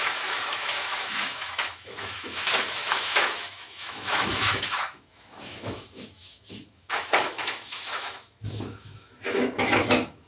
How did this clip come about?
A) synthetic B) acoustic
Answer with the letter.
A